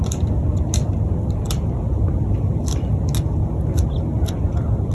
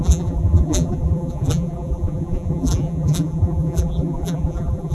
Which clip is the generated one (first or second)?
second